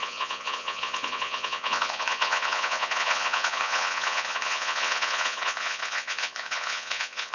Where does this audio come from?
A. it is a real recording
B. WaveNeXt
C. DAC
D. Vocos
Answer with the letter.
D